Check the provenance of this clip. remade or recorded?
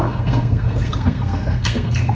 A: remade